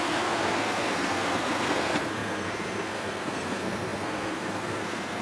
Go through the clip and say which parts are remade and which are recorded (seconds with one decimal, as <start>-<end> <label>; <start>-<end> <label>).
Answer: 0.0-5.2 remade